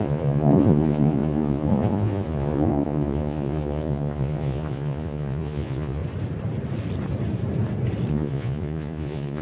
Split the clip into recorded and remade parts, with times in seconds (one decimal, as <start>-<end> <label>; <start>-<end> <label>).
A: 0.0-6.0 remade; 6.0-8.1 recorded; 8.1-9.4 remade